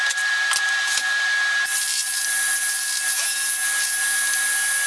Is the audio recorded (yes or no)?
yes